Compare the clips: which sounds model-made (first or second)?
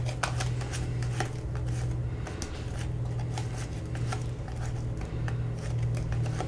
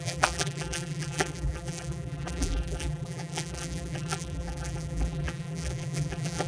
second